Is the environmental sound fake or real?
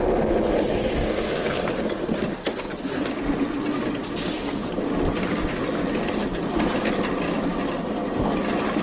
real